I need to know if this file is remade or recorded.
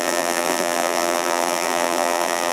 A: remade